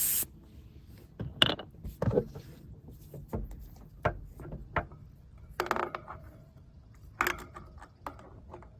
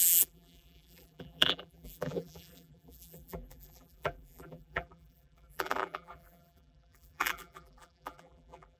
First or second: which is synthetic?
second